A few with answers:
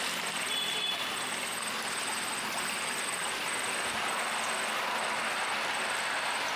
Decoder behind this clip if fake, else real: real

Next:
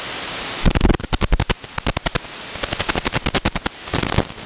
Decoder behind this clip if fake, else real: real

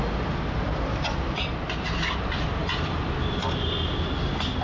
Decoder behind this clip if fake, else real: real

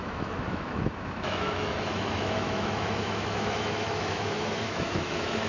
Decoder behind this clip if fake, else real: fake, autoencoder, DAC-VAE